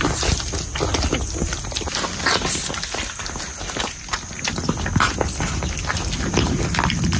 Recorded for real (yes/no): yes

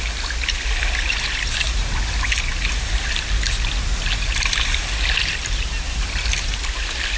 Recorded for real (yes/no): yes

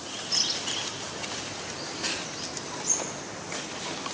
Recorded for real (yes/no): yes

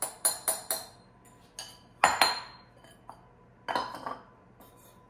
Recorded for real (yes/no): yes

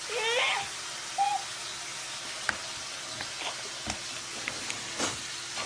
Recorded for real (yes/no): yes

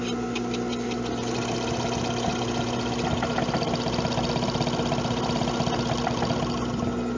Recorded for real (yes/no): yes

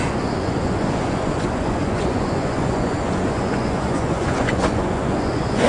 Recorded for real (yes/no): no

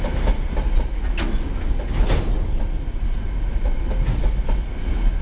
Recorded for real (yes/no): yes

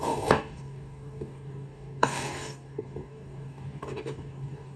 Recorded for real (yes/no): no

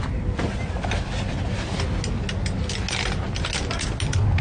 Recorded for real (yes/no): yes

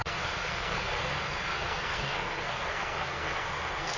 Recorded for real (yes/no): no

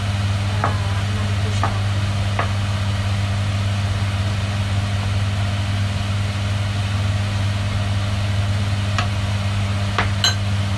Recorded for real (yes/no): yes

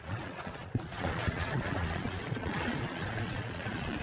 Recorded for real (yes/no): no